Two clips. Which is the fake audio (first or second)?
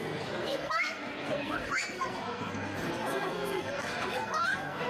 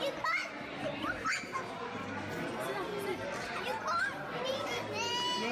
first